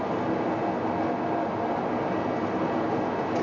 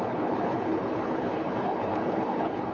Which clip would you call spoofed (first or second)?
second